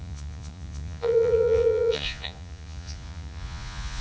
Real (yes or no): no